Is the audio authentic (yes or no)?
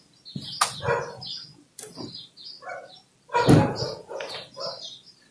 yes